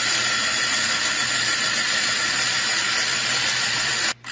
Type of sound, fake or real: real